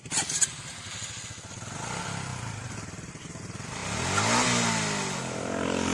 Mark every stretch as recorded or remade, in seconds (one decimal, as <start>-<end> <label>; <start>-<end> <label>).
0.0-5.9 recorded